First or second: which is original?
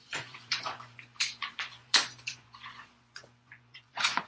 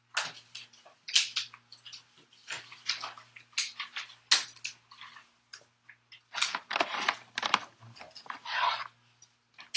second